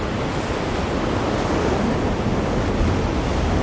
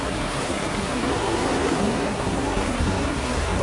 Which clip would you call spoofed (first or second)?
second